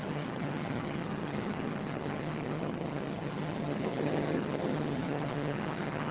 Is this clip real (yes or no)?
no